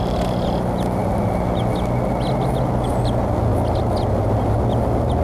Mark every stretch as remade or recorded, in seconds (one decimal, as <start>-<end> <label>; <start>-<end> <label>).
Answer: 0.0-5.2 recorded